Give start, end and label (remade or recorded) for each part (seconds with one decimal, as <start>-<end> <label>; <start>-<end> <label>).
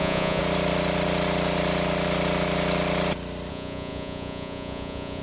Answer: 0.0-0.4 remade; 0.4-3.5 recorded; 3.5-5.2 remade